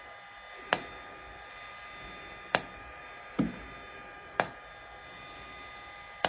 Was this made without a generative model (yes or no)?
yes